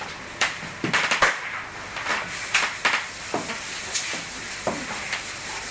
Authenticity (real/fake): real